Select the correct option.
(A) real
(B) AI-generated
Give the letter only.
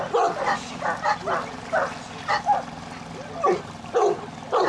A